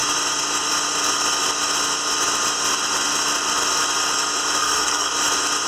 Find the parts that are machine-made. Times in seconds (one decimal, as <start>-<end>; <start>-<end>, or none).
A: 4.6-5.1